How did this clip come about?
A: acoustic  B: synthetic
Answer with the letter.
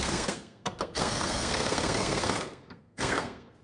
B